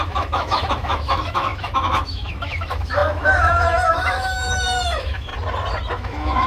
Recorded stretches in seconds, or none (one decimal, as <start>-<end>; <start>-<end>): 5.3-5.9